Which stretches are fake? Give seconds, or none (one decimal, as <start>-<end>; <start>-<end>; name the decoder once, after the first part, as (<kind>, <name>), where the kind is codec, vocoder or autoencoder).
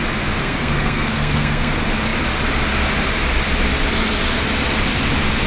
0.4-1.7 (codec, SNAC)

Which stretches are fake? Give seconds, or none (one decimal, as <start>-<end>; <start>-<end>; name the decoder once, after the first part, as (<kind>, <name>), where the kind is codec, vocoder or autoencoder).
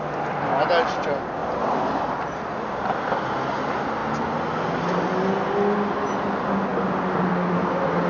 none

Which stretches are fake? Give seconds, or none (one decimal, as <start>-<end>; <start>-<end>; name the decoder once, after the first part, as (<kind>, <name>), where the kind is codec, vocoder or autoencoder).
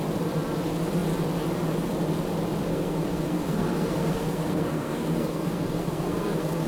2.7-6.7 (codec, SNAC)